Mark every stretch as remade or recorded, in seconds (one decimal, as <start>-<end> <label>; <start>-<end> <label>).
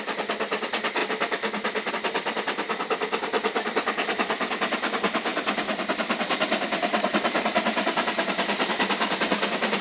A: 0.0-9.8 recorded